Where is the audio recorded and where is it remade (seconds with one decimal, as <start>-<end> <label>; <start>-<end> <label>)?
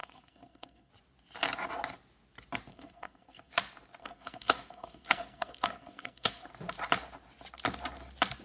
0.0-0.9 remade; 0.9-2.7 recorded; 2.7-3.5 remade; 3.5-4.0 recorded; 4.0-6.5 remade; 6.5-8.4 recorded